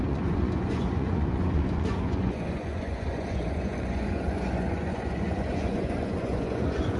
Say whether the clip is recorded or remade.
remade